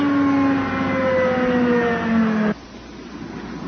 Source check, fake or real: real